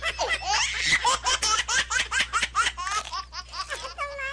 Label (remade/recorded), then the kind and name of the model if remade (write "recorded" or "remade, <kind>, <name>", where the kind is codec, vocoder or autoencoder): recorded